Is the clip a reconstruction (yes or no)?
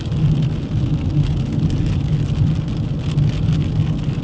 no